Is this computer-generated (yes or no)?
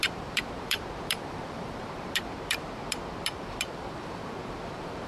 yes